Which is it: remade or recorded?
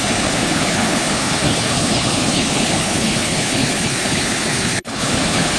remade